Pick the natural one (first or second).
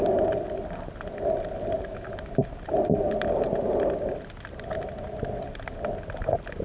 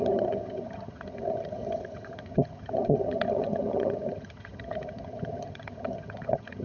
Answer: first